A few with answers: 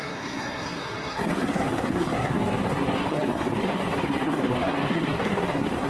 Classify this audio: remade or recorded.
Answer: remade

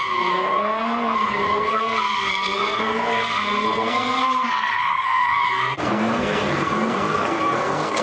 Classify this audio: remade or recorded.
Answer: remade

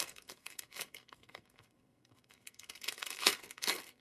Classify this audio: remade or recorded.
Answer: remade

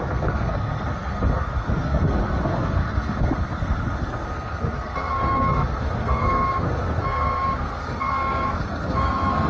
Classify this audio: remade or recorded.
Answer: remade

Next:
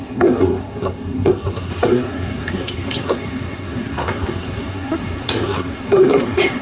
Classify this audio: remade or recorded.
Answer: remade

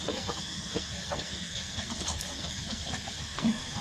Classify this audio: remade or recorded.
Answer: remade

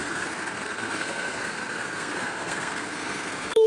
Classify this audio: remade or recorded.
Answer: remade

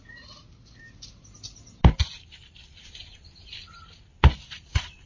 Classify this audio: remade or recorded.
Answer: recorded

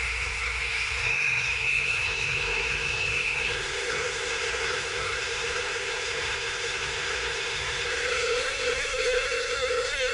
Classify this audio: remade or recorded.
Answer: remade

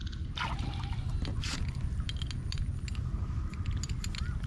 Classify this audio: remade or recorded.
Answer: recorded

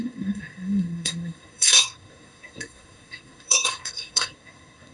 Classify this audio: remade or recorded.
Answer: remade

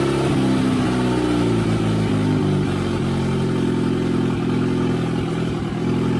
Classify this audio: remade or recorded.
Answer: recorded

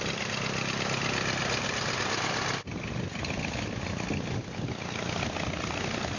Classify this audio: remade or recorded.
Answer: recorded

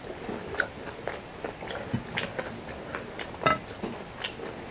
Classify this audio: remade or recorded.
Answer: recorded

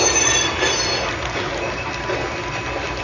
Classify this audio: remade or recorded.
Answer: recorded